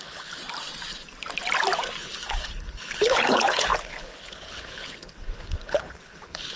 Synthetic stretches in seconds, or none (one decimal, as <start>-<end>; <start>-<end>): 0.0-0.4; 2.0-6.6